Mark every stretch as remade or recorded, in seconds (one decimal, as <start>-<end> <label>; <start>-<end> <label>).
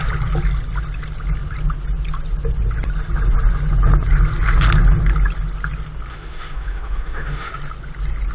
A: 0.0-6.1 recorded; 6.1-7.5 remade; 7.5-8.3 recorded